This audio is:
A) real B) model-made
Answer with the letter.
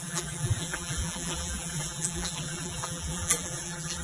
B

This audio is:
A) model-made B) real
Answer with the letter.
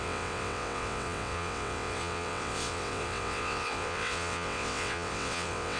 A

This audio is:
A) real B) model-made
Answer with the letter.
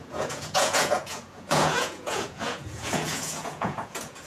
B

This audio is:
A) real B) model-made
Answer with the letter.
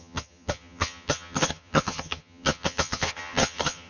B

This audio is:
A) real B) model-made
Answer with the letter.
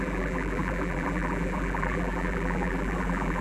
B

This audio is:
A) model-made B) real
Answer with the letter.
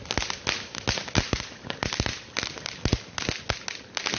B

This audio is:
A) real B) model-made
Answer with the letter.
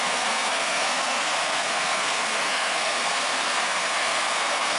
B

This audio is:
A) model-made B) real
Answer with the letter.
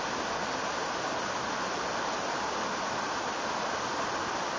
B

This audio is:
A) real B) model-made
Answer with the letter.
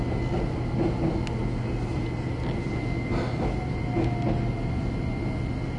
A